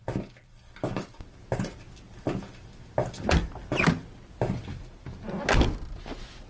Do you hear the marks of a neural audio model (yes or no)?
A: no